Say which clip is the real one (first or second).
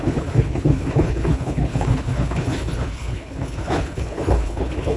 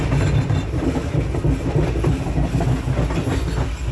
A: second